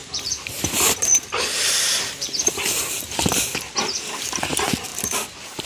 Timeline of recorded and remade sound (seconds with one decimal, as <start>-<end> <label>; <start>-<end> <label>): 0.0-3.4 remade; 3.4-4.9 recorded; 4.9-5.7 remade